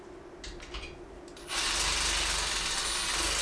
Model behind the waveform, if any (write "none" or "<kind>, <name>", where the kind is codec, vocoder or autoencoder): none